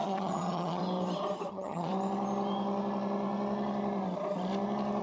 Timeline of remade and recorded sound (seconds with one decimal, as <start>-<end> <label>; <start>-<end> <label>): 0.0-0.8 remade; 0.8-1.5 recorded; 1.5-1.9 remade; 1.9-5.0 recorded